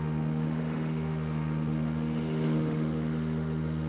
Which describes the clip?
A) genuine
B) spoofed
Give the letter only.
B